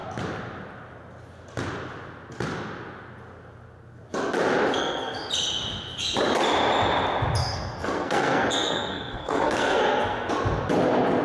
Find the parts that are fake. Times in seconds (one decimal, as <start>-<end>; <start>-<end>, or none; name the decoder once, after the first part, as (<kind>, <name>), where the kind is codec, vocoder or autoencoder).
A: 4.7-5.2 (codec, SNAC); 7.4-10.3